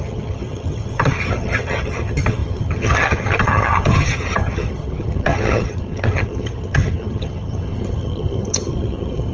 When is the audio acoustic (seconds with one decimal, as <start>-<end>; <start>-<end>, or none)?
none